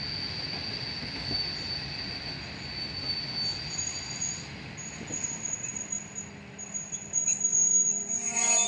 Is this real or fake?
real